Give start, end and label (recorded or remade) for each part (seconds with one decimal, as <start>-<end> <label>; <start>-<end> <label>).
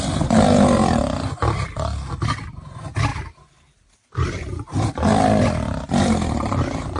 0.0-3.1 recorded; 3.1-5.4 remade; 5.4-7.0 recorded